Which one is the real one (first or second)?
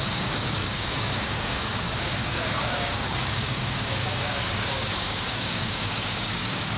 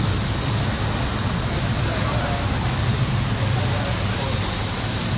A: second